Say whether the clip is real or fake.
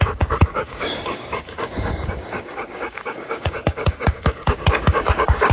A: fake